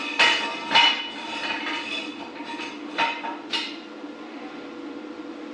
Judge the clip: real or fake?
fake